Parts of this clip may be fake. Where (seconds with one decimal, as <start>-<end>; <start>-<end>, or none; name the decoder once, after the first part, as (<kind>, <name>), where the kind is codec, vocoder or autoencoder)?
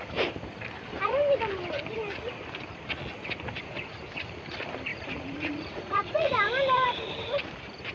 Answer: 4.9-6.3 (vocoder, Vocos)